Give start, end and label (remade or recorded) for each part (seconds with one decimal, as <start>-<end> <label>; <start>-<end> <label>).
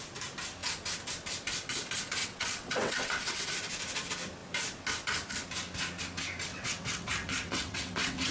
0.0-2.2 recorded; 2.2-3.5 remade; 3.5-6.5 recorded; 6.5-8.3 remade